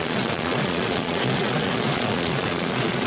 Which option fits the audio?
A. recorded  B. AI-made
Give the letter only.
B